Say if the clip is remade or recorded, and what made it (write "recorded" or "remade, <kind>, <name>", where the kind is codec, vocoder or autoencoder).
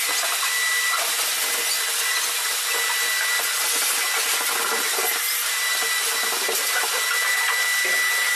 recorded